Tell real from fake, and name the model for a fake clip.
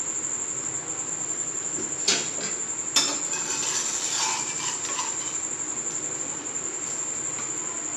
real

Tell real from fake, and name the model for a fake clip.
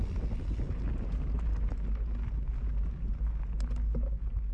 real